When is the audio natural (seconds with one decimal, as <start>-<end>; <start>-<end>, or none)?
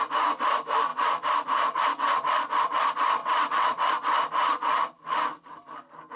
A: 0.0-3.2; 3.9-6.2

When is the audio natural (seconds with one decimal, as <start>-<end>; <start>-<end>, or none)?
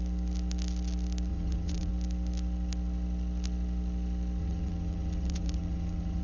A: 0.0-1.3; 1.9-4.4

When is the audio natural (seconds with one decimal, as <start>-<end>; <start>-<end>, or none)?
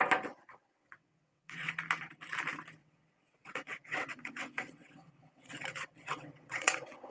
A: 0.0-0.5; 1.7-2.8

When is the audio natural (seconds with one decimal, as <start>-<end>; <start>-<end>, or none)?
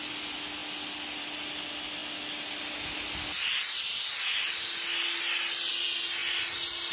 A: 0.0-6.9